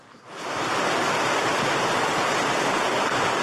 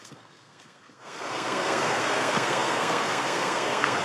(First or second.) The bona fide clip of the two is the first